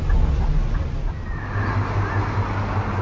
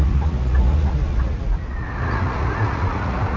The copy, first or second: second